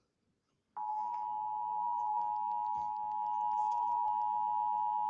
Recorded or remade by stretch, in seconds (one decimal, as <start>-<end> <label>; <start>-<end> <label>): 0.0-0.9 recorded; 0.9-2.2 remade; 2.2-3.6 recorded; 3.6-4.1 remade; 4.1-5.1 recorded